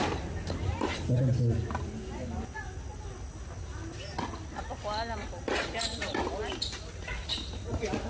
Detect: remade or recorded recorded